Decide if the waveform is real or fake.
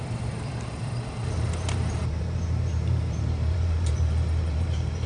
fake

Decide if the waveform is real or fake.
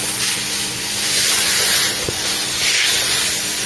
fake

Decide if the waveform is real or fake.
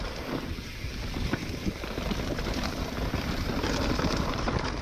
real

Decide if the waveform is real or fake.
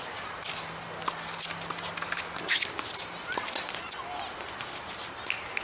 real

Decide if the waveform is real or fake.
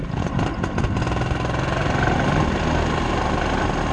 real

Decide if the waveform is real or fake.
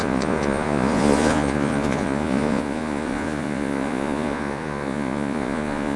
fake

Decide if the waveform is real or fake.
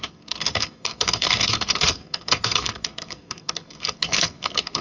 fake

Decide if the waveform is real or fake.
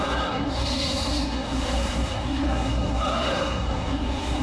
fake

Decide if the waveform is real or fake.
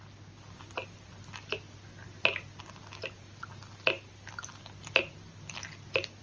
real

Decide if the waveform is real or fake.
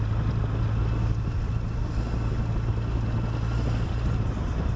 real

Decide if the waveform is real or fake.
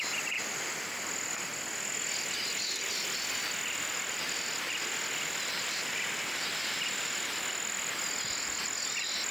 real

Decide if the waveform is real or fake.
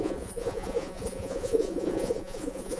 fake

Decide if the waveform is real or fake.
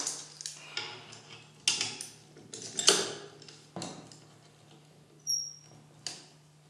real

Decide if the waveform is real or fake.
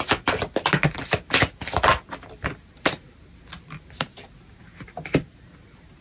real